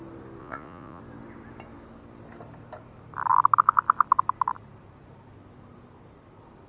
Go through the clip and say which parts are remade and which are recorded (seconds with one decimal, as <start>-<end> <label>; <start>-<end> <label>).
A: 0.0-0.4 recorded; 0.4-1.0 remade; 1.0-6.7 recorded